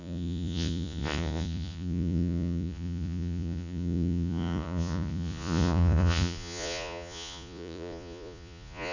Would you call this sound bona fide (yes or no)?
no